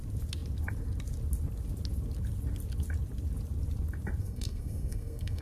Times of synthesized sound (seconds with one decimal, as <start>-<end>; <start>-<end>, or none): 4.2-5.4